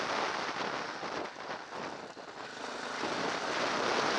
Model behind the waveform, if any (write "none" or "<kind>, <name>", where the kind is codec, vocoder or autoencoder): none